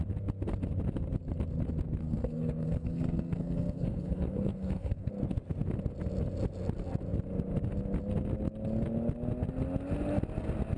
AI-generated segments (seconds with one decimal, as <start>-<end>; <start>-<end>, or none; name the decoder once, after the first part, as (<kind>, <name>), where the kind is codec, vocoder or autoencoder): 2.0-5.1 (codec, SNAC)